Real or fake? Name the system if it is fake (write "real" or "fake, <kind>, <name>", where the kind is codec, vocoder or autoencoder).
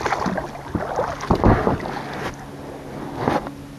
real